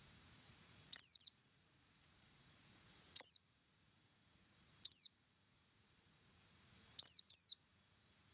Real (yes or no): no